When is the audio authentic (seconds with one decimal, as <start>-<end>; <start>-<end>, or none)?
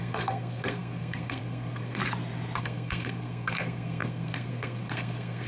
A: 2.0-2.6